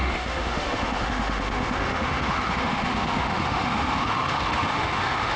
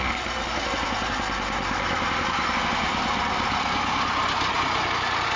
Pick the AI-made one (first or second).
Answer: first